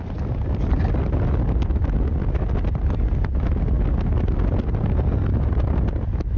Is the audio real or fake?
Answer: real